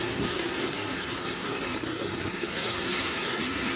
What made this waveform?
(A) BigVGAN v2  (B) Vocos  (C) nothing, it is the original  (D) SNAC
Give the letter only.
D